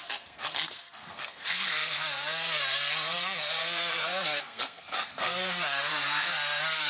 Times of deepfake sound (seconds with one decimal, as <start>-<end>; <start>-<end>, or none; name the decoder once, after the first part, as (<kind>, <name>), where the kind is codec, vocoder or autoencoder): 0.0-6.9 (codec, SNAC)